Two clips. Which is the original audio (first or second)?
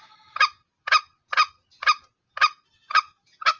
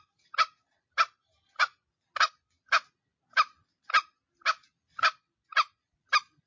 second